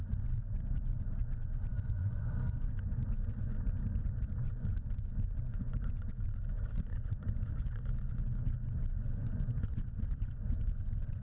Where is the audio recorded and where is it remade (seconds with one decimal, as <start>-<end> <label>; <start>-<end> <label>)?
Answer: 0.0-11.2 remade